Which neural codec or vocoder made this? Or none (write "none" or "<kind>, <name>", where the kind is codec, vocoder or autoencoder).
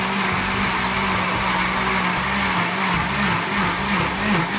none